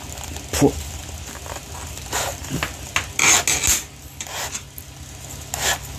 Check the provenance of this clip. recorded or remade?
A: recorded